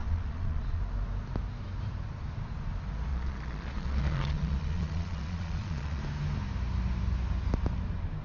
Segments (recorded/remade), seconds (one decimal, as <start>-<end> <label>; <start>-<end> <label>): 0.0-0.8 remade; 0.8-3.1 recorded; 3.1-6.0 remade; 6.0-8.2 recorded